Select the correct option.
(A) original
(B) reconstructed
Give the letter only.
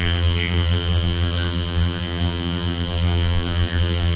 B